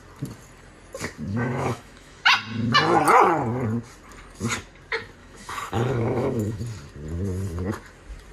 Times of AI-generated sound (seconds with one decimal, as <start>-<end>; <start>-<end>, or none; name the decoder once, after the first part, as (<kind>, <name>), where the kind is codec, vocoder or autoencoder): 1.3-2.2 (autoencoder, DAC-VAE); 5.2-6.6